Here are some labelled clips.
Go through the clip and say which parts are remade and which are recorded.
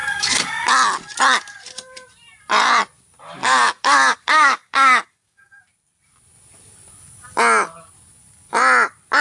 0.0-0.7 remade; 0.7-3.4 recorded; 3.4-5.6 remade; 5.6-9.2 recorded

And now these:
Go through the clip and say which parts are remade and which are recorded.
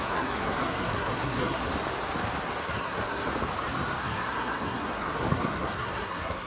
0.0-1.7 remade; 1.7-2.6 recorded; 2.6-3.3 remade; 3.3-4.0 recorded; 4.0-6.5 remade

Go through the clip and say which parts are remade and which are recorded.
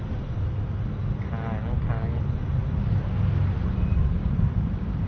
0.0-4.1 recorded; 4.1-5.1 remade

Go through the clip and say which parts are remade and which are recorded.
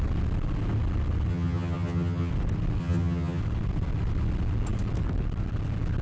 0.0-1.3 recorded; 1.3-2.3 remade; 2.3-2.8 recorded; 2.8-3.4 remade; 3.4-6.0 recorded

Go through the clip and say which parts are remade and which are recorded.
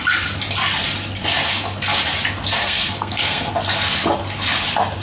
0.0-2.6 recorded; 2.6-3.5 remade; 3.5-5.0 recorded